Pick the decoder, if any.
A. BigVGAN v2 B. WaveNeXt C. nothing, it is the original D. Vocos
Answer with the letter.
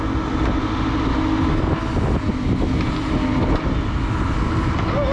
C